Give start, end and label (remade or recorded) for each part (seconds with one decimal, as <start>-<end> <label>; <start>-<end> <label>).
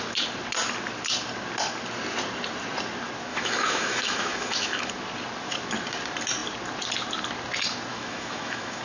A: 0.0-3.3 recorded; 3.3-4.9 remade; 4.9-7.9 recorded; 7.9-8.8 remade